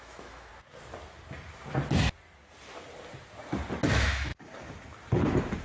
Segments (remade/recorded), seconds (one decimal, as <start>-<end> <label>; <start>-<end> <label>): 0.0-0.5 remade; 0.5-3.9 recorded; 3.9-4.3 remade; 4.3-5.6 recorded